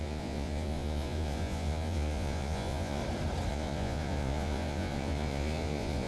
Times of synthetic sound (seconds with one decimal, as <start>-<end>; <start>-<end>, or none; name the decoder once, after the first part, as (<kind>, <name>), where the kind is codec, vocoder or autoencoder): 0.0-3.0 (vocoder, Vocos); 3.5-6.1